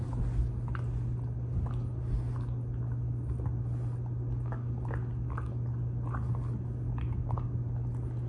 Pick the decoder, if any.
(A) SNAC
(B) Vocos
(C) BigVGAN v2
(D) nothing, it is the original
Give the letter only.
D